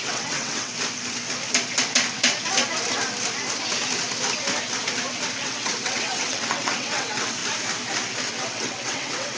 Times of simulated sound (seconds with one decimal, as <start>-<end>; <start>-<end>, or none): 0.0-0.7; 5.4-7.4; 8.3-9.4